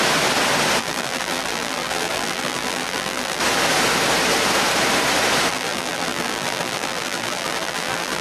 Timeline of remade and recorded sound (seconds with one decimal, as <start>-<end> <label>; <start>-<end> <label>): 0.0-0.8 recorded; 0.8-3.4 remade; 3.4-5.5 recorded; 5.5-8.2 remade